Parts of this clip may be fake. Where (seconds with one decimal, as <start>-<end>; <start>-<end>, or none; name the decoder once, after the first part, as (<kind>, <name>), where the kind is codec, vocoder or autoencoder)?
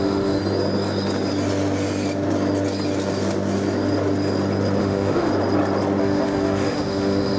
0.0-0.4 (autoencoder, DAC-VAE); 4.8-5.3; 6.0-7.4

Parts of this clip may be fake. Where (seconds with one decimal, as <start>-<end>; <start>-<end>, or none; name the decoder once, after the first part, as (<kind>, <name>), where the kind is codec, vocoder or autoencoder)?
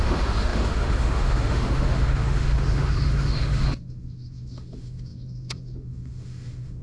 0.0-6.8 (autoencoder, DAC-VAE)